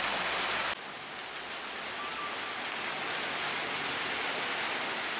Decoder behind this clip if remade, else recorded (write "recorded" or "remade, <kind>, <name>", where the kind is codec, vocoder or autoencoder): recorded